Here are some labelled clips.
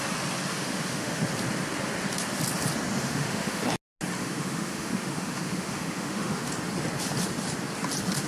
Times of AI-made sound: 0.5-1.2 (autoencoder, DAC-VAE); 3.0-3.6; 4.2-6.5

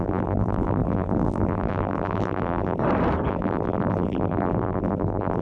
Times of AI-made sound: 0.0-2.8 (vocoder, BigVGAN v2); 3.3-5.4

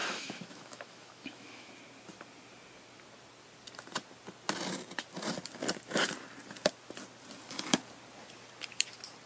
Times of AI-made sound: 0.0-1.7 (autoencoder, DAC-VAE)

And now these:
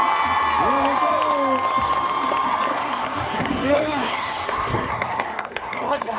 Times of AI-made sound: 2.7-6.2 (codec, SNAC)

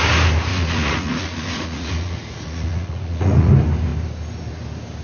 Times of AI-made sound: 0.5-3.5 (vocoder, Vocos)